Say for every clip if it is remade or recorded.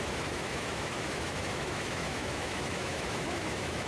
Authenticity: remade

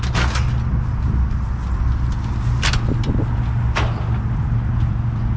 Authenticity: recorded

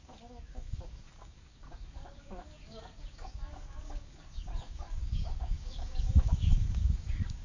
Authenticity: remade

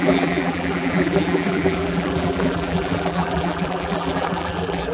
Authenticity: remade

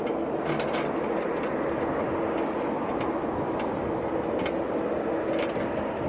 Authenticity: recorded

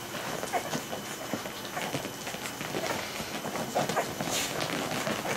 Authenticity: recorded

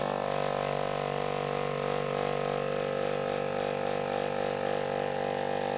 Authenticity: recorded